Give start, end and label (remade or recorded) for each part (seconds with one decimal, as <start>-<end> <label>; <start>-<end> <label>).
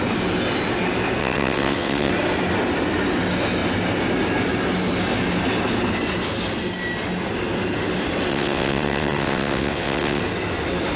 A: 0.0-1.2 recorded; 1.2-2.1 remade; 2.1-8.3 recorded; 8.3-10.2 remade; 10.2-11.0 recorded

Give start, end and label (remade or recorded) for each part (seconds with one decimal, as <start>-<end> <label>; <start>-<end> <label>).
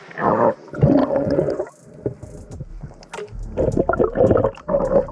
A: 0.0-1.0 recorded; 1.0-1.7 remade; 1.7-5.1 recorded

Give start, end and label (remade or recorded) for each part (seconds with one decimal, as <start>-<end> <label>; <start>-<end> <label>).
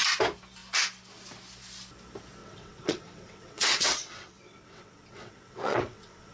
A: 0.0-2.4 recorded; 2.4-6.3 remade